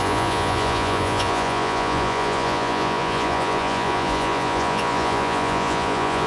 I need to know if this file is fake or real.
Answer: fake